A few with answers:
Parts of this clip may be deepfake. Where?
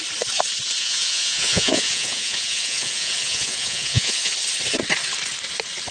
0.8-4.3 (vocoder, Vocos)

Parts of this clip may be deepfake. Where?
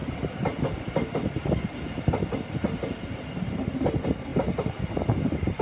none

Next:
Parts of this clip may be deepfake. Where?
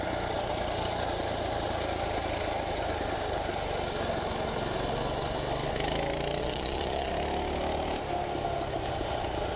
6.4-7.1 (vocoder, Vocos)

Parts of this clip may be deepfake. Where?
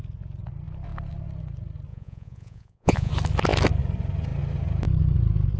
1.9-3.1 (vocoder, Vocos)